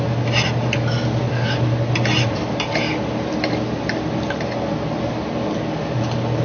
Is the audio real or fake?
real